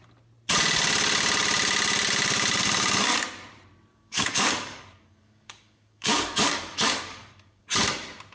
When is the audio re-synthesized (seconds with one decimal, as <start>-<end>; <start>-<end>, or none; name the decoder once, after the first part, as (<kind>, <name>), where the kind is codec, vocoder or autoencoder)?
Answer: 3.9-7.7 (codec, DAC)